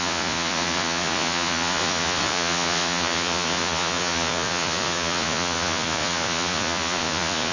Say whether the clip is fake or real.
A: fake